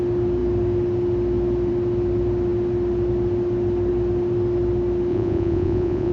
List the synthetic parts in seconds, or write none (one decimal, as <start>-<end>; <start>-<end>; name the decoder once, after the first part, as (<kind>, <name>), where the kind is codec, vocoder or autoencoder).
5.1-6.1 (vocoder, Vocos)